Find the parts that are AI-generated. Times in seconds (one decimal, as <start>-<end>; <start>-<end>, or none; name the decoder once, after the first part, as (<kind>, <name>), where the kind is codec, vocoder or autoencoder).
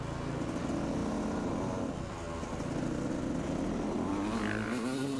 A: none